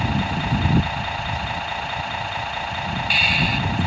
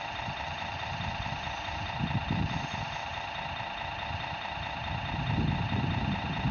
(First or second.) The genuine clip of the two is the first